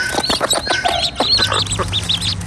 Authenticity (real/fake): real